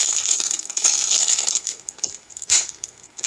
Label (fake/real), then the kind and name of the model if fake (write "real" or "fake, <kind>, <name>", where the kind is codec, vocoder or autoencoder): fake, codec, SNAC